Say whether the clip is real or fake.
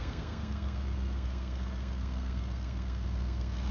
fake